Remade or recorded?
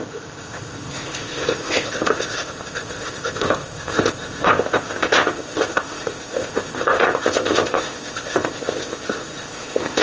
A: remade